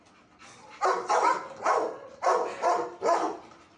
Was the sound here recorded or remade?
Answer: recorded